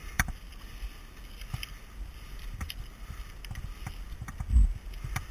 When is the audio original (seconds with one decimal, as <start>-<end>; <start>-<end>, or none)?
3.2-5.3